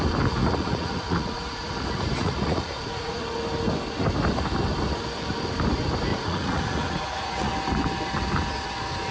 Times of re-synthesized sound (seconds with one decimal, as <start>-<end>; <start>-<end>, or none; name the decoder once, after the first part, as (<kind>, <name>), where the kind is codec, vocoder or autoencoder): 0.4-1.7 (vocoder, Vocos); 2.2-3.4; 6.1-7.5